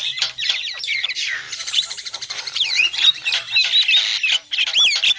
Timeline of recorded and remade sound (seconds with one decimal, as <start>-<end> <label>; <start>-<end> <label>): 0.0-3.1 remade; 3.1-5.2 recorded

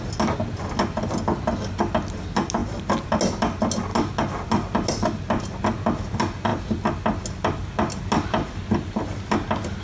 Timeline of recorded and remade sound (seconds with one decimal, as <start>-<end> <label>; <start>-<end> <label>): 0.0-9.8 recorded

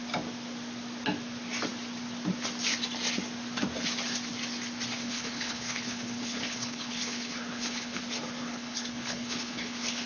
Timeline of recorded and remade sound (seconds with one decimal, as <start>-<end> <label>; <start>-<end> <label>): 0.0-5.0 recorded; 5.0-8.0 remade; 8.0-8.4 recorded; 8.4-10.1 remade

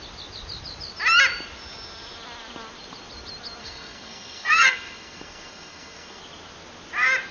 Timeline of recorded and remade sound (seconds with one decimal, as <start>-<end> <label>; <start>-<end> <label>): 0.0-3.6 recorded; 3.6-6.2 remade; 6.2-7.3 recorded

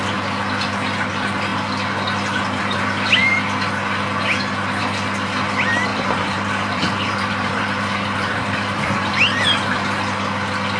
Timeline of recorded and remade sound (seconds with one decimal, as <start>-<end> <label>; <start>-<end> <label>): 0.0-5.9 recorded; 5.9-9.1 remade; 9.1-10.8 recorded

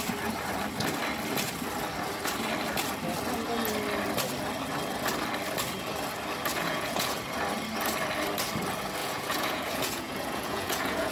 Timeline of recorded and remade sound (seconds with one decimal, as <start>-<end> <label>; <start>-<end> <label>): 0.0-6.5 recorded; 6.5-7.2 remade; 7.2-9.0 recorded; 9.0-11.1 remade